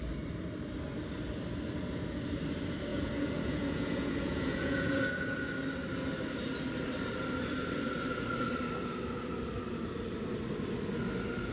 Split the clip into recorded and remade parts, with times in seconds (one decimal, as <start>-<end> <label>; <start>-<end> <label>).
0.0-2.9 recorded; 2.9-5.5 remade; 5.5-11.5 recorded